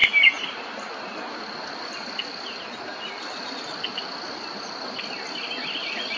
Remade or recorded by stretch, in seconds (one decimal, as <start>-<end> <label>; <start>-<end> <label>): 0.0-6.2 recorded